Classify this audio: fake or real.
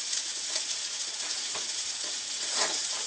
fake